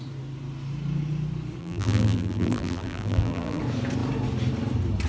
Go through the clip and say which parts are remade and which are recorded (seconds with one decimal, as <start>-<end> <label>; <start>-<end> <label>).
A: 0.0-1.6 recorded; 1.6-3.6 remade; 3.6-5.1 recorded